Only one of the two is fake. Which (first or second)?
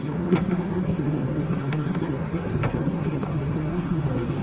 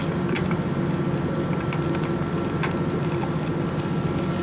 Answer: first